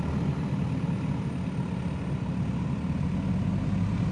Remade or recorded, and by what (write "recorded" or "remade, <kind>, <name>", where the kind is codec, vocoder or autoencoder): recorded